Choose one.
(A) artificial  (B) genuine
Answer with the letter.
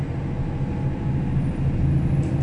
B